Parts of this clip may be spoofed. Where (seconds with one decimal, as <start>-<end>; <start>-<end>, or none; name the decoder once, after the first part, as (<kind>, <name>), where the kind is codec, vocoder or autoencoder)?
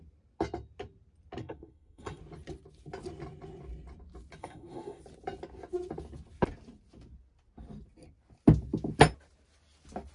1.4-2.2 (codec, SNAC); 4.4-5.0